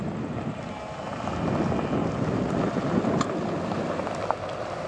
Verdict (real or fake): real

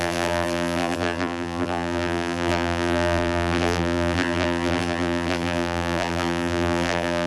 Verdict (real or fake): fake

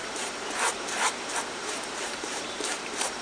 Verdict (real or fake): fake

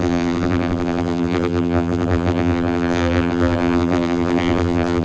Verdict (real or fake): fake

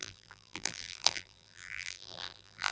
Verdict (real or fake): fake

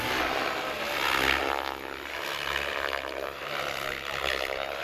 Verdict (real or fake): real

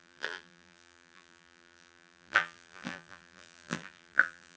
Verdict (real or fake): fake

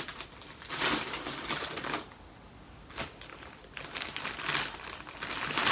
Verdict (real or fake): real